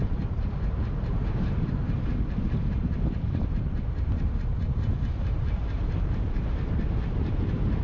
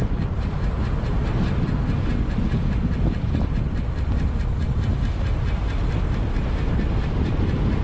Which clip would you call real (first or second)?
second